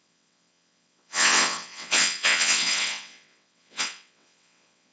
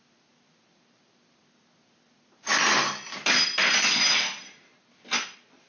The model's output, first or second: first